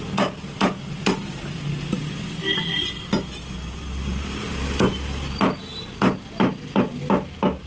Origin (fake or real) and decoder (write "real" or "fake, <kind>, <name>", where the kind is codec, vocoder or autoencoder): real